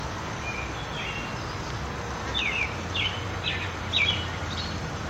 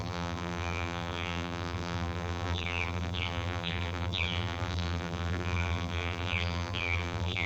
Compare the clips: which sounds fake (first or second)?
second